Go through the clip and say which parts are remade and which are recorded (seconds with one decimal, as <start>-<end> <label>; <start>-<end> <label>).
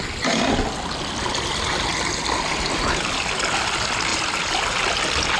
0.0-5.4 recorded